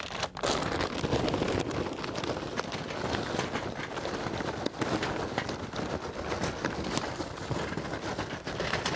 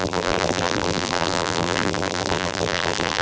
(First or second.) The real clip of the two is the first